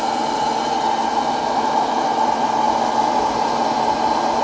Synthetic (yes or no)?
no